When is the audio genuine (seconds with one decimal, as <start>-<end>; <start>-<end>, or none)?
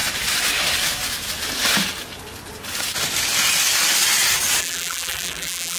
0.0-4.6